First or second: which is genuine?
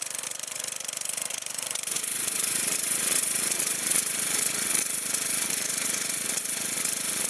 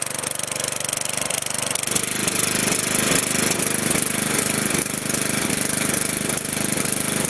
second